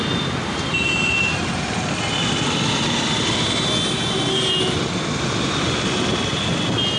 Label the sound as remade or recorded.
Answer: recorded